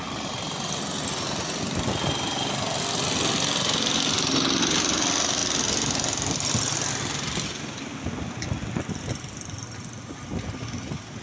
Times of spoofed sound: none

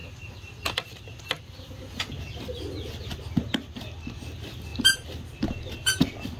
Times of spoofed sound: none

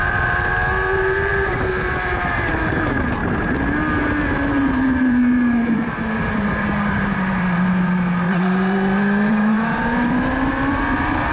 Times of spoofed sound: 0.0-3.2 (vocoder, BigVGAN v2); 4.5-11.3

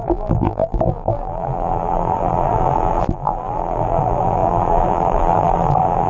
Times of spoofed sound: 0.0-6.1 (vocoder, BigVGAN v2)

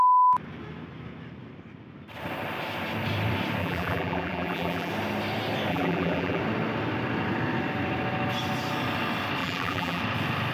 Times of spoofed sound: 3.6-4.9 (vocoder, BigVGAN v2); 5.7-6.4; 9.4-10.0

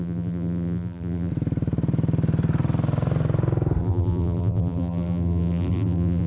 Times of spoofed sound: 0.0-1.3 (vocoder, BigVGAN v2); 3.8-6.3

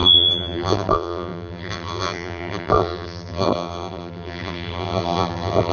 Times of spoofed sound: 0.0-5.7 (vocoder, BigVGAN v2)